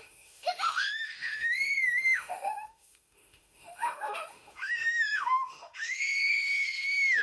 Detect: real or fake fake